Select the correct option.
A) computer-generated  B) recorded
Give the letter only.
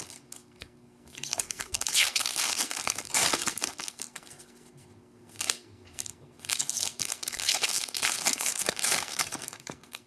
A